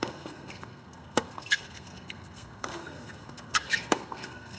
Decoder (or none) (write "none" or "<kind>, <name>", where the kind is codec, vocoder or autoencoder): codec, SNAC